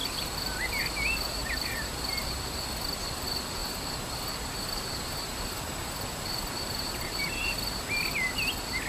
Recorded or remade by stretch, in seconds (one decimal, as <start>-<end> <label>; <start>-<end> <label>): 0.0-0.8 remade; 0.8-1.4 recorded; 1.4-2.2 remade; 2.2-3.6 recorded; 3.6-7.8 remade; 7.8-8.9 recorded